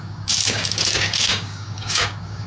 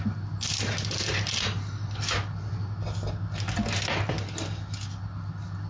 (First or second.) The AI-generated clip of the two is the first